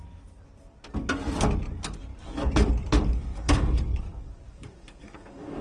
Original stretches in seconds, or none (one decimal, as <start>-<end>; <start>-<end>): 0.0-2.1; 2.7-3.3